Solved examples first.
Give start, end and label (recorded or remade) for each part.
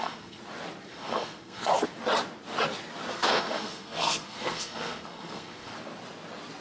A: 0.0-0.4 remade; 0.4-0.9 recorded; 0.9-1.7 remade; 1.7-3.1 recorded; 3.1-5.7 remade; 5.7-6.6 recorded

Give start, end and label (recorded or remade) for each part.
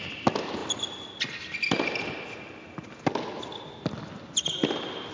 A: 0.0-5.1 recorded